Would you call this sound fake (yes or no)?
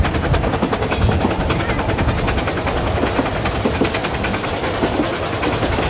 no